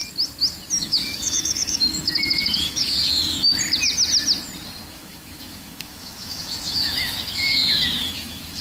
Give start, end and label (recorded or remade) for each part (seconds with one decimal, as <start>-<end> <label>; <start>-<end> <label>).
0.0-0.8 recorded; 0.8-3.5 remade; 3.5-4.9 recorded; 4.9-8.6 remade